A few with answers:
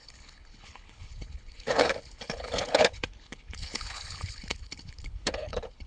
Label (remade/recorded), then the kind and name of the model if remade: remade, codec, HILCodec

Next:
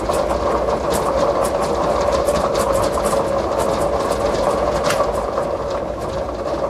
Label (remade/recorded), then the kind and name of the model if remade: recorded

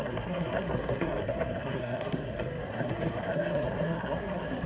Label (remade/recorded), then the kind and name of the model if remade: remade, codec, SNAC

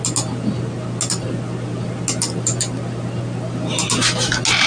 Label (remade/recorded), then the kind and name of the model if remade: recorded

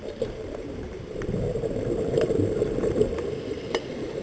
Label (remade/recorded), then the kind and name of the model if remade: remade, vocoder, BigVGAN v2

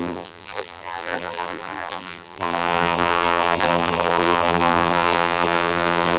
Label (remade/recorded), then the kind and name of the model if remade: remade, vocoder, BigVGAN v2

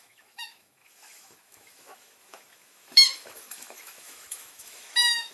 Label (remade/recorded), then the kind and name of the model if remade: remade, autoencoder, DAC-VAE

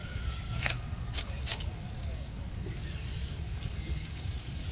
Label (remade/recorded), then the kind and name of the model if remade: remade, codec, DAC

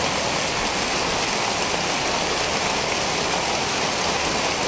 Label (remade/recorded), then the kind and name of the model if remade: recorded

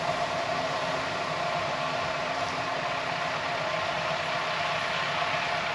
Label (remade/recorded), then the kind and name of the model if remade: remade, vocoder, BigVGAN v2